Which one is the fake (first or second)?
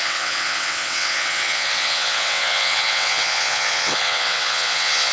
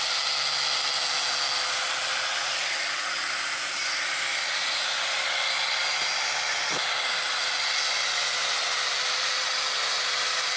first